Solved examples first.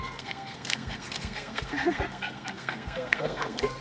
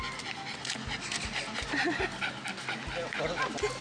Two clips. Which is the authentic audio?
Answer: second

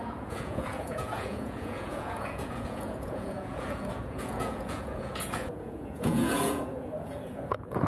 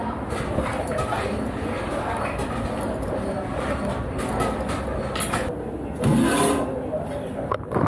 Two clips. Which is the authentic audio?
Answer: second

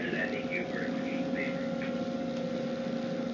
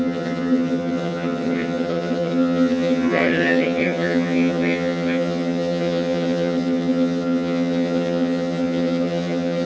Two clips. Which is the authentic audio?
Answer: first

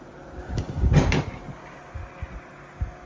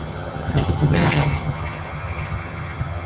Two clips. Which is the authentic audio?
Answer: first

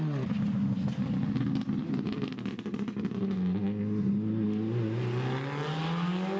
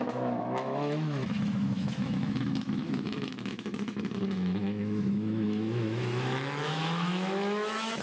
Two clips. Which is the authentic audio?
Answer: first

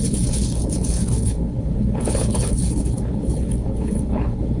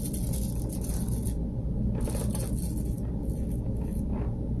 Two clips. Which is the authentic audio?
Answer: second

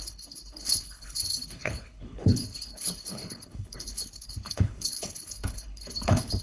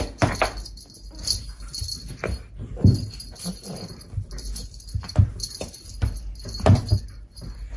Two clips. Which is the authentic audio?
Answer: second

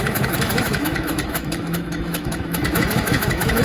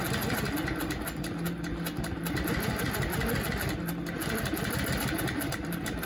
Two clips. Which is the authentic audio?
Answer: second